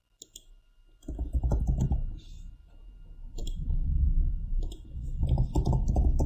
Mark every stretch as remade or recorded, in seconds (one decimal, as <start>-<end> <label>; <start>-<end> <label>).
0.0-3.4 recorded; 3.4-5.2 remade; 5.2-6.3 recorded